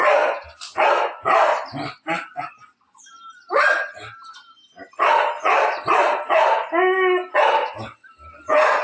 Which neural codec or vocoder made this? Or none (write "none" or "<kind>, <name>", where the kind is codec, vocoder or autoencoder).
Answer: none